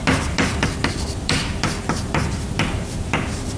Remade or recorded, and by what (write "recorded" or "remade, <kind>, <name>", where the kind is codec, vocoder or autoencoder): remade, vocoder, BigVGAN v2